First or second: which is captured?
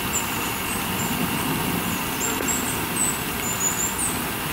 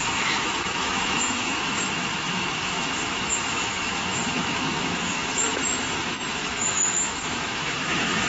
first